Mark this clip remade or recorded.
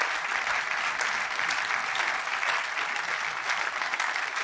recorded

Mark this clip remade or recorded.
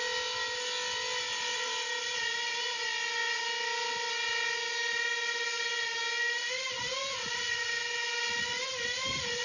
recorded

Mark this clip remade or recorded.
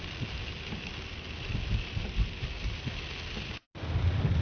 recorded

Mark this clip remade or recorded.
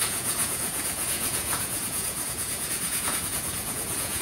remade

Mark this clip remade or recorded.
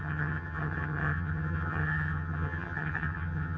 remade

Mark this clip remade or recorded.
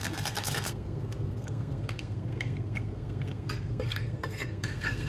remade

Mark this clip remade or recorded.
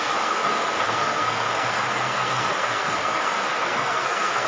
remade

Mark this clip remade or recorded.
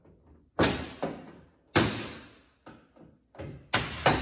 recorded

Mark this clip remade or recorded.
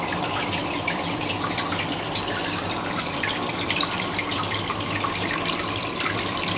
remade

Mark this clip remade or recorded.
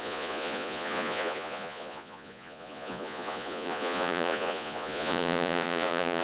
remade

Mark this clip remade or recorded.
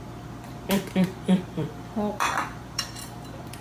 remade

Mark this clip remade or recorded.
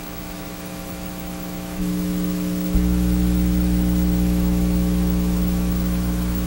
remade